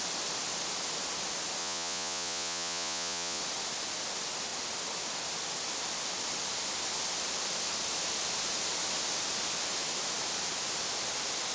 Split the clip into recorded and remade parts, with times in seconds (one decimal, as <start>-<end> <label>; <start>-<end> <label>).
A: 0.0-1.6 recorded; 1.6-3.4 remade; 3.4-11.5 recorded